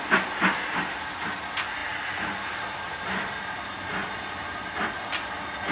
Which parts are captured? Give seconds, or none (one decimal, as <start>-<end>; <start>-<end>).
0.0-5.7